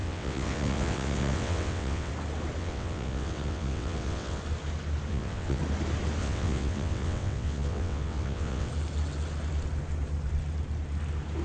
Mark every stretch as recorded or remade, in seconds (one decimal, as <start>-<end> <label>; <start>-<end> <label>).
0.0-2.1 remade; 2.1-2.6 recorded; 2.6-4.4 remade; 4.4-5.1 recorded; 5.1-5.6 remade; 5.6-6.2 recorded; 6.2-8.7 remade; 8.7-11.4 recorded